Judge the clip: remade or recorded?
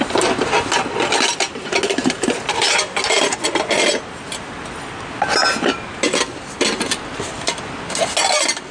recorded